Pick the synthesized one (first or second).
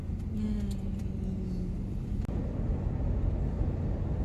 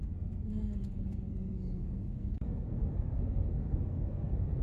second